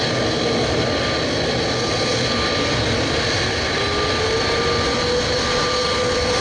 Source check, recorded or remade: recorded